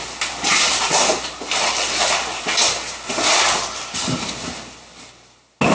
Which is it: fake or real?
real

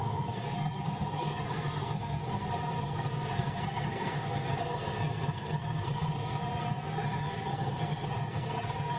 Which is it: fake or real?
fake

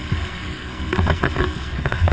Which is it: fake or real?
fake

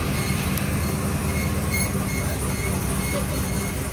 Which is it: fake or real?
real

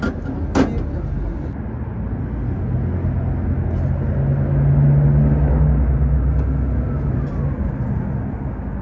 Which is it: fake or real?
real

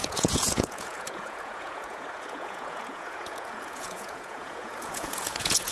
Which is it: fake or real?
fake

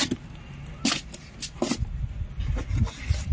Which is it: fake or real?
real